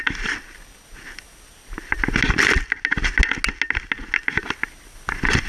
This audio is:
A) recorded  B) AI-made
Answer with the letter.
A